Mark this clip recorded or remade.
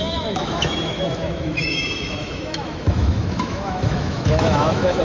remade